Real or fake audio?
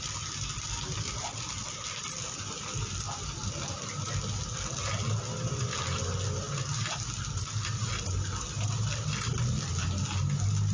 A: real